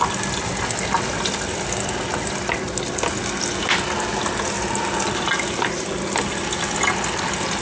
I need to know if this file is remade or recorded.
recorded